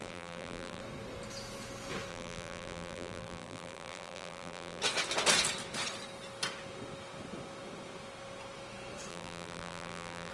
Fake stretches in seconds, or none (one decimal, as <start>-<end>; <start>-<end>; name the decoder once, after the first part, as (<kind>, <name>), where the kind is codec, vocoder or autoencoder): 0.0-0.8 (vocoder, BigVGAN v2); 2.1-4.8; 9.1-10.3